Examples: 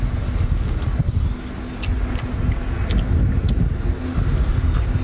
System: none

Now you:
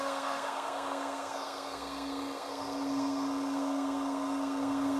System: codec, SNAC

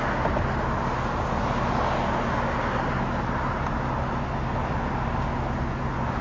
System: none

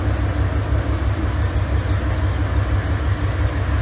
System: none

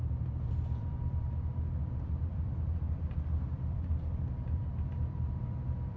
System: vocoder, BigVGAN v2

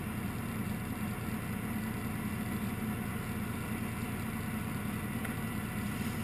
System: none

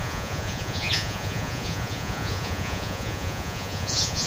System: vocoder, Vocos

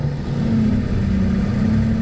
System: none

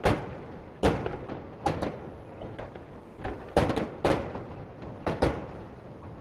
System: none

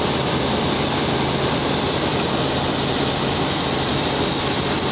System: vocoder, BigVGAN v2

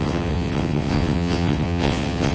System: vocoder, WaveNeXt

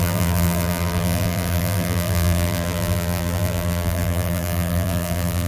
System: vocoder, BigVGAN v2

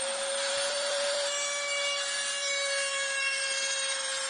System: vocoder, BigVGAN v2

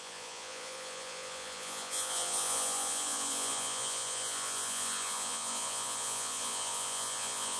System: vocoder, Vocos